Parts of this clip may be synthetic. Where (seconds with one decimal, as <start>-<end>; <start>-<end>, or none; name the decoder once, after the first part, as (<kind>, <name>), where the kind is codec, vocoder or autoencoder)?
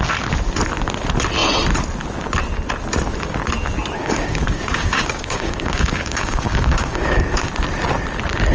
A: 4.0-7.5 (codec, DAC)